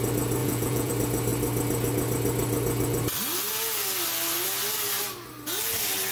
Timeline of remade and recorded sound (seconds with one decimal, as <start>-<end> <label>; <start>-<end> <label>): 0.0-0.4 recorded; 0.4-0.9 remade; 0.9-6.1 recorded